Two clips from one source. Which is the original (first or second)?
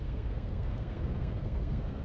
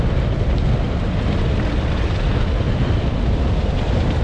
second